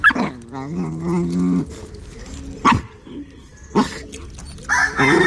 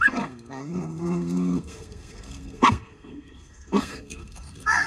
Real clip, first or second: first